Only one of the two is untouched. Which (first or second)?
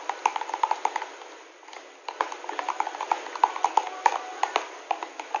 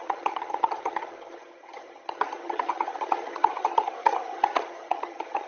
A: first